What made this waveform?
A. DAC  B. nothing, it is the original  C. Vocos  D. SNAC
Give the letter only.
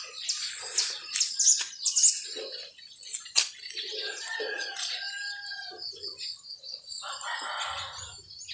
B